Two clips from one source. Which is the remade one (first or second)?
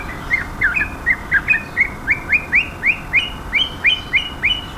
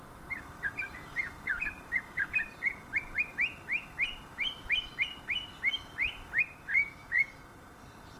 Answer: second